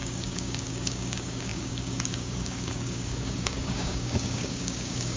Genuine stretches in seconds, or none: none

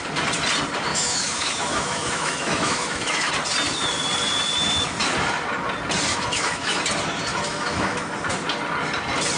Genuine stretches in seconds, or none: 0.0-0.9; 3.3-6.1; 6.8-7.3; 8.1-9.4

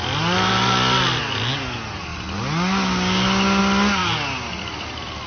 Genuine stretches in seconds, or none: 0.0-5.3

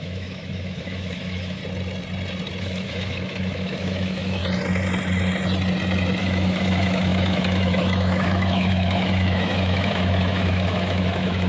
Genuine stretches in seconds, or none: 1.6-2.6; 4.4-6.2

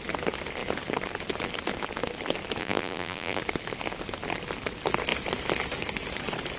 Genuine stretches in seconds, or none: 0.0-2.6; 3.4-6.6

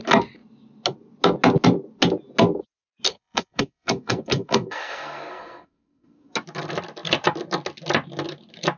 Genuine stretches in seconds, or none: 0.0-3.1; 6.3-8.8

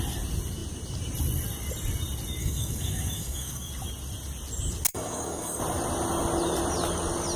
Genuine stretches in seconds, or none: 0.0-2.4; 3.7-4.9; 5.6-7.4

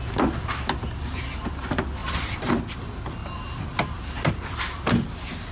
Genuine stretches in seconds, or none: 0.0-5.5